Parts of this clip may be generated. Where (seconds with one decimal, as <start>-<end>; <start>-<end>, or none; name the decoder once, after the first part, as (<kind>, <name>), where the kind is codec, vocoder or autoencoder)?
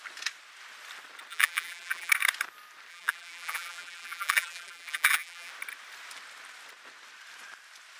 1.3-2.1 (vocoder, BigVGAN v2); 2.9-5.5